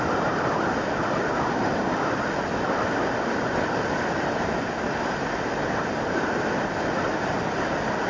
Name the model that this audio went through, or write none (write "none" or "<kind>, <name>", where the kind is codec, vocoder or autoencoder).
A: none